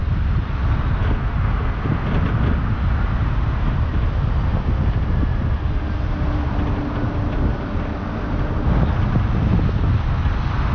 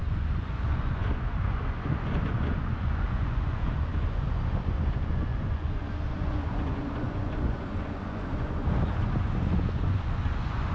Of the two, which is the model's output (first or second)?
second